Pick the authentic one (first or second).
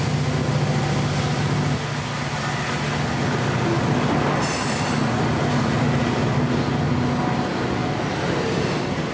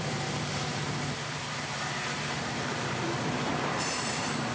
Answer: first